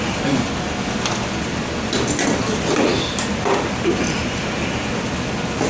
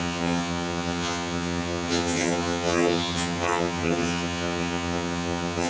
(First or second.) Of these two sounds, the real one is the first